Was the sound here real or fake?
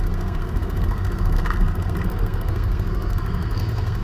fake